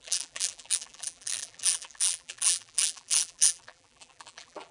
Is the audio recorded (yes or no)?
no